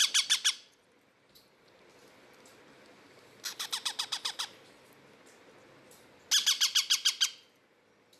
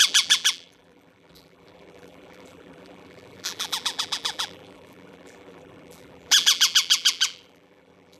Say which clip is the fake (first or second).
second